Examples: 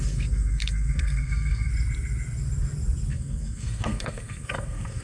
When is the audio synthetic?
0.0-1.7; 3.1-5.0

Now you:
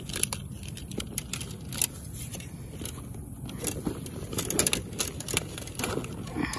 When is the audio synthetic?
none